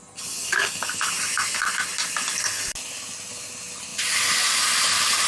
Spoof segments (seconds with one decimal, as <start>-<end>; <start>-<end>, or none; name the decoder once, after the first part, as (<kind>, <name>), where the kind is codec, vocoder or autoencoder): none